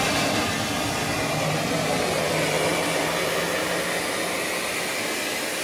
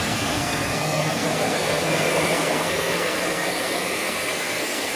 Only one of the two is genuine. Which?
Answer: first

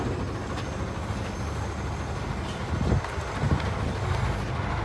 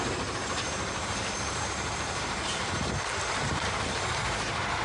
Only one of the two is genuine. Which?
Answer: first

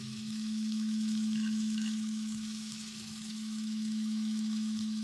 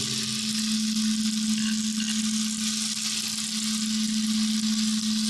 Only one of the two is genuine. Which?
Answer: second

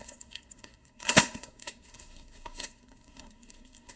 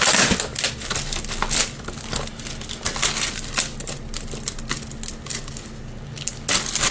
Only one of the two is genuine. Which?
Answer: second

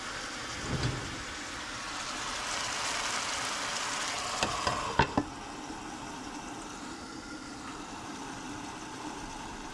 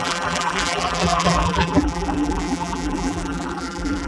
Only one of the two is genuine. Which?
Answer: first